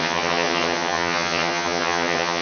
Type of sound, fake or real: fake